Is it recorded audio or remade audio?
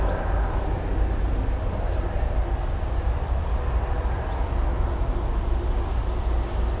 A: recorded